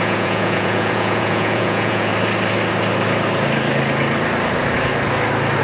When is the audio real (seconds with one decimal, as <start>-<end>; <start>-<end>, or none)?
2.1-5.6